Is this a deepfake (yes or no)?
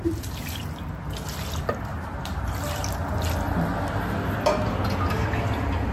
no